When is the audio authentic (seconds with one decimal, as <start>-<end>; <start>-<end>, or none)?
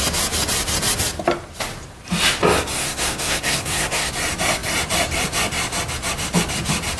0.0-2.8; 4.1-7.0